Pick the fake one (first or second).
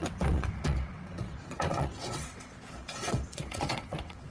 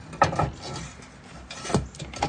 first